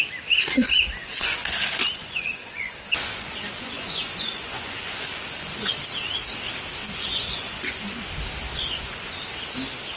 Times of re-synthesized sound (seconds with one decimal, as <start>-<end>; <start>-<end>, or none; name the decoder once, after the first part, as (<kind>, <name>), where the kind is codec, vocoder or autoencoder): 1.0-1.6 (vocoder, Vocos); 2.0-5.7; 6.8-7.9; 8.5-9.1